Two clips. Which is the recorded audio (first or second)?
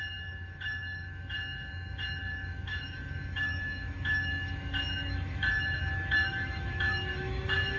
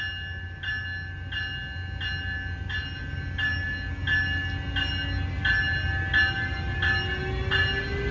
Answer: second